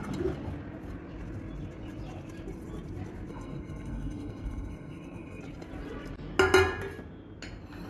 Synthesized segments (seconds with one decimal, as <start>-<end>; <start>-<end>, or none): 3.3-5.4